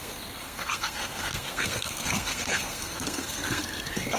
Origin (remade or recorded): remade